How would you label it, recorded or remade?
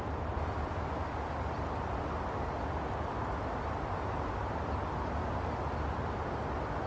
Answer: recorded